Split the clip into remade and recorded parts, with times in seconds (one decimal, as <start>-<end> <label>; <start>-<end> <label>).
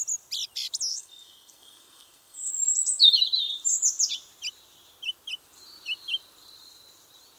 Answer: 0.0-0.9 recorded; 0.9-2.5 remade; 2.5-7.4 recorded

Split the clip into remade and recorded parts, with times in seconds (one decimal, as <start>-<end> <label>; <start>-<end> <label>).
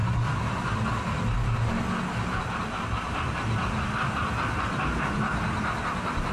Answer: 0.0-6.3 recorded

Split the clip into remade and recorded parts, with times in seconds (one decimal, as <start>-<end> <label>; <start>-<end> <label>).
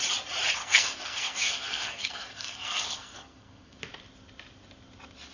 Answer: 0.0-0.6 recorded; 0.6-3.8 remade; 3.8-5.3 recorded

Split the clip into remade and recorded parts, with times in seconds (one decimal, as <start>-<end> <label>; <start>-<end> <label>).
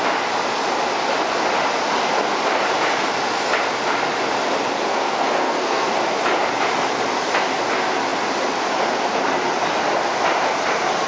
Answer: 0.0-4.9 recorded; 4.9-5.9 remade; 5.9-11.1 recorded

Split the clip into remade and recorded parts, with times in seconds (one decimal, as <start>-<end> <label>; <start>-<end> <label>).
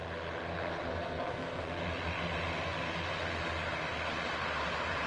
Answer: 0.0-0.9 recorded; 0.9-1.6 remade; 1.6-5.1 recorded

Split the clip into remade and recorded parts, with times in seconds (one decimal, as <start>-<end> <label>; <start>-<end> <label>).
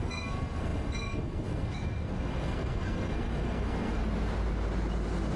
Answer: 0.0-4.0 remade; 4.0-5.4 recorded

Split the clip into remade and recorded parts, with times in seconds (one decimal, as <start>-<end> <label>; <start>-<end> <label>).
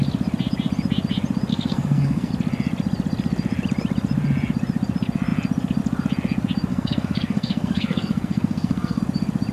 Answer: 0.0-1.5 recorded; 1.5-2.3 remade; 2.3-6.7 recorded; 6.7-9.0 remade; 9.0-9.5 recorded